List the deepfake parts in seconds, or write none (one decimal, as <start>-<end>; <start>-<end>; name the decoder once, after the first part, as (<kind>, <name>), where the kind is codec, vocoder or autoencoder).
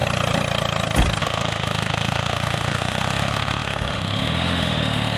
1.2-5.2 (autoencoder, DAC-VAE)